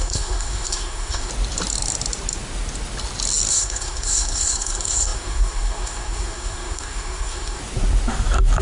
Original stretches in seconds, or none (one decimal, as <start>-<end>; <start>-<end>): 1.3-3.5; 7.6-8.6